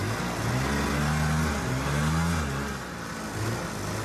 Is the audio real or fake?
real